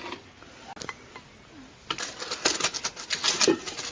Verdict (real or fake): real